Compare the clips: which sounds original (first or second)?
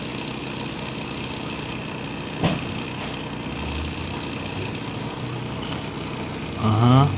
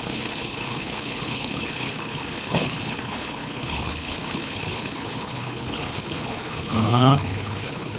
first